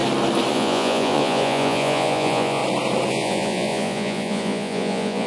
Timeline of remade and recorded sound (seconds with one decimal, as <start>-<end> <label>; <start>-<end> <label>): 0.0-0.5 recorded; 0.5-2.6 remade; 2.6-3.1 recorded; 3.1-5.3 remade